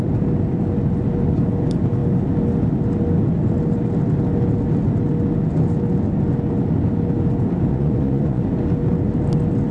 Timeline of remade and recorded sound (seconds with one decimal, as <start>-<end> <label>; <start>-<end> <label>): 0.0-7.7 recorded; 7.7-8.4 remade; 8.4-9.7 recorded